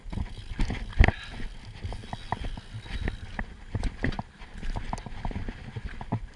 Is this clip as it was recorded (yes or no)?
yes